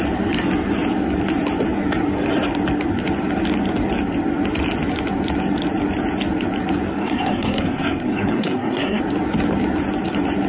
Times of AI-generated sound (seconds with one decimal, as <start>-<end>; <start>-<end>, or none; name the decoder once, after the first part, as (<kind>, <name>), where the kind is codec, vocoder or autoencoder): 7.0-9.0 (codec, SNAC)